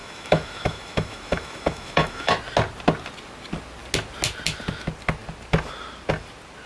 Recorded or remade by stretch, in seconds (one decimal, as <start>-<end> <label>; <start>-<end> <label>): 0.0-2.3 remade; 2.3-6.7 recorded